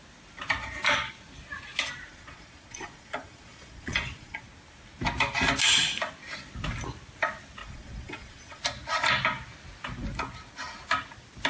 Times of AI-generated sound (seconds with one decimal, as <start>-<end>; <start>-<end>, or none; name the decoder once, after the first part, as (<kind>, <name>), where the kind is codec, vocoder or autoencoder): 2.1-4.4 (vocoder, Vocos); 7.6-8.6